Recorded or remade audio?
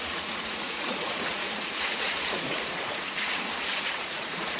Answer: remade